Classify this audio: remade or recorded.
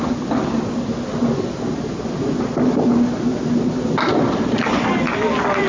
recorded